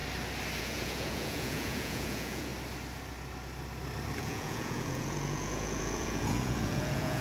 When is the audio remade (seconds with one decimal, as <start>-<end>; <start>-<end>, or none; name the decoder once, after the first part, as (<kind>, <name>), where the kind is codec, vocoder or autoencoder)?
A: 0.6-2.5 (vocoder, Vocos); 4.2-7.2

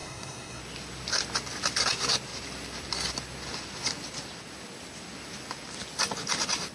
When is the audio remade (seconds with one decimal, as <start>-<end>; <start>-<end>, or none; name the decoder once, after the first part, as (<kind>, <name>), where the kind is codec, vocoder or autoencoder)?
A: 0.0-0.6 (codec, SNAC)

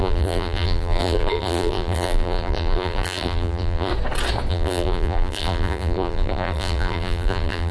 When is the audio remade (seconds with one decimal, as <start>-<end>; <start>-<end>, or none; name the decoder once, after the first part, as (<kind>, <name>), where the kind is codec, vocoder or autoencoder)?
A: 0.0-3.9 (vocoder, BigVGAN v2); 4.5-7.7

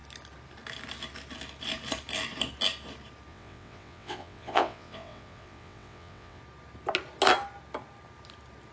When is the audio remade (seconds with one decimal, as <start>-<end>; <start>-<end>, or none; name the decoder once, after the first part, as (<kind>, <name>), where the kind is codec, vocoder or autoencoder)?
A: 3.3-6.4 (vocoder, WaveNeXt)

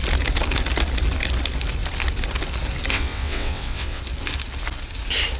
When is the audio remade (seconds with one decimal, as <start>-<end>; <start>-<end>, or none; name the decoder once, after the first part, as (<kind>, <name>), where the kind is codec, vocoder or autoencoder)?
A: 2.9-4.0 (vocoder, WaveNeXt)

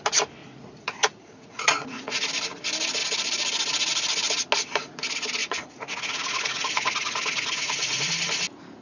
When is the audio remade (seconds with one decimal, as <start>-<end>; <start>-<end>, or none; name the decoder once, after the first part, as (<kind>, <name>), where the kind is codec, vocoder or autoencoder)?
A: 0.4-2.3 (vocoder, Vocos); 5.4-8.1